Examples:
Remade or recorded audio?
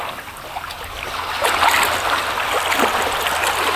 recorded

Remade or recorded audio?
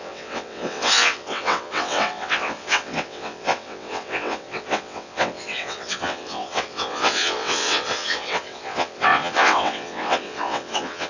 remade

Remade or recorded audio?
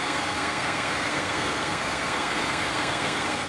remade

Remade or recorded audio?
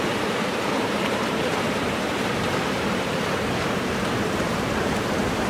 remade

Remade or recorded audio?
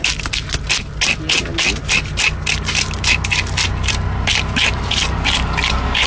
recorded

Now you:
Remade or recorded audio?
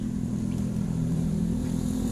remade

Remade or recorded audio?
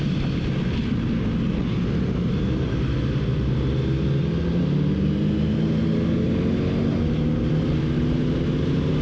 recorded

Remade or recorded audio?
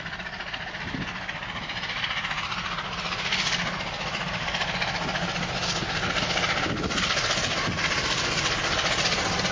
recorded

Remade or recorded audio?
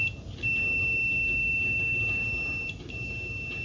recorded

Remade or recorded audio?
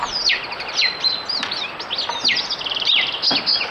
recorded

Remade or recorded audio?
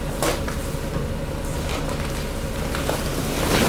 remade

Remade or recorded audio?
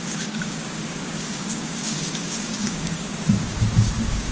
remade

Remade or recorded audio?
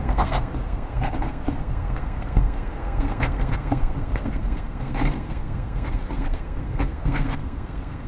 remade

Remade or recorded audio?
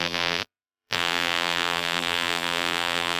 remade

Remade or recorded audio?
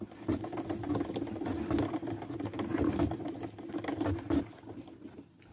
recorded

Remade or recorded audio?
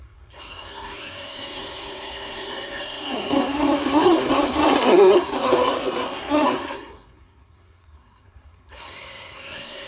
remade